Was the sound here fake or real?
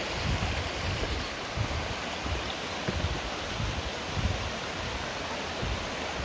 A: real